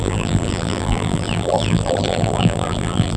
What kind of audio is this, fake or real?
fake